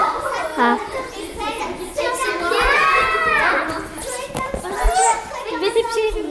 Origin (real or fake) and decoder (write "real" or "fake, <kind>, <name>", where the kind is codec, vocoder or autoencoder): real